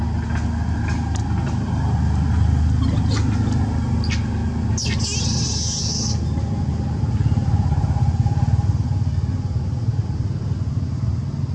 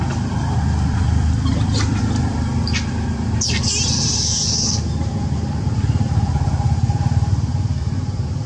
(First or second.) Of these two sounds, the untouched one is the first